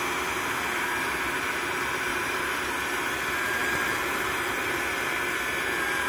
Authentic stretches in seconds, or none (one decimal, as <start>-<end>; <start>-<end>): 0.0-2.1; 2.7-3.6; 4.8-6.1